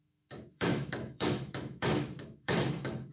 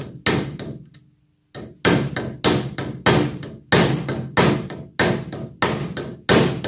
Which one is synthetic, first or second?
first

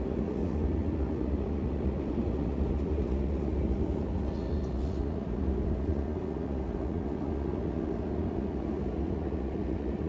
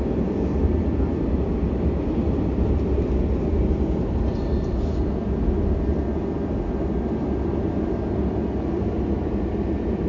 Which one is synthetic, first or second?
first